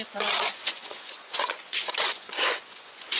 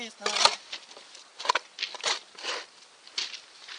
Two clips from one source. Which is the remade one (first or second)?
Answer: first